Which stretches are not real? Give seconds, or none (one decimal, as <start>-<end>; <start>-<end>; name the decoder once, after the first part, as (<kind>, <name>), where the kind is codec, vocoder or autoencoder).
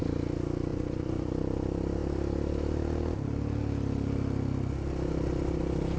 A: 0.7-1.3 (vocoder, Vocos)